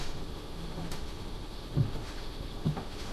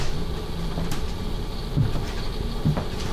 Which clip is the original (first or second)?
second